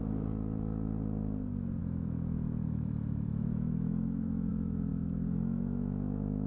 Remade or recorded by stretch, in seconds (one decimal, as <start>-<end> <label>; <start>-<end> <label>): 0.0-1.8 recorded; 1.8-4.5 remade; 4.5-4.9 recorded; 4.9-6.5 remade